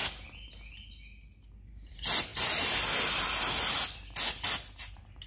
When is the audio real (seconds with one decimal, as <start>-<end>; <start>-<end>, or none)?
0.0-5.3